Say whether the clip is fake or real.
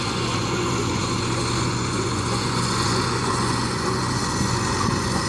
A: fake